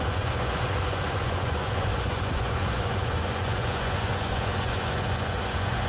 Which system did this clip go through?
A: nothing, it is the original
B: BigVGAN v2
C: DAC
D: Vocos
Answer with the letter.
D